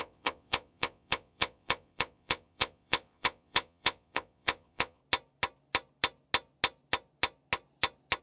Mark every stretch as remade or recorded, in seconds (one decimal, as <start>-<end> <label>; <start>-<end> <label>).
0.0-5.0 remade; 5.0-8.2 recorded